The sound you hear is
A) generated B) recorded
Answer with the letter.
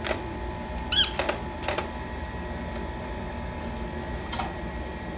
A